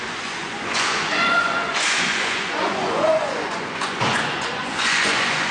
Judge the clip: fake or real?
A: fake